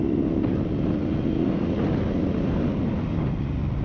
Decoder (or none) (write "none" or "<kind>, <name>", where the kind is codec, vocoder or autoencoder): none